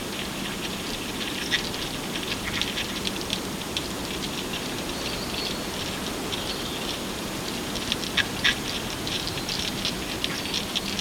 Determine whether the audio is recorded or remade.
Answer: recorded